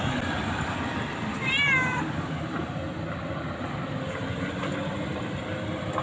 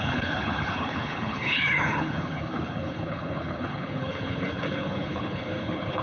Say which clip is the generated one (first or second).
second